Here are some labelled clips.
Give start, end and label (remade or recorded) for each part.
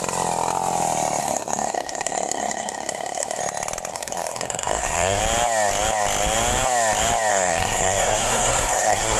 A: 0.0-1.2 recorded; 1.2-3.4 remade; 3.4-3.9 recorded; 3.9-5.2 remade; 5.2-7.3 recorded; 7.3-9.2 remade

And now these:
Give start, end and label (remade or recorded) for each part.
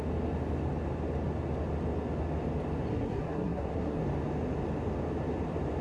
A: 0.0-2.9 recorded; 2.9-4.0 remade; 4.0-5.8 recorded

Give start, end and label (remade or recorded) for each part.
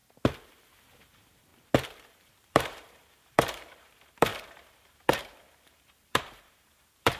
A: 0.0-1.0 recorded; 1.0-1.5 remade; 1.5-2.1 recorded; 2.1-7.2 remade